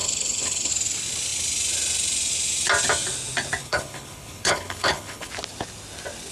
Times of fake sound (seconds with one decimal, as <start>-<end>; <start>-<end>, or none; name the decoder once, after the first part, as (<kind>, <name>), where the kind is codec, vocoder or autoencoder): 0.0-0.7 (codec, HILCodec); 3.6-5.3